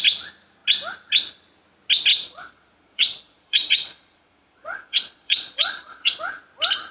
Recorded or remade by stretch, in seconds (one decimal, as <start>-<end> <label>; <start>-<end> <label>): 0.0-2.1 recorded; 2.1-6.2 remade; 6.2-6.9 recorded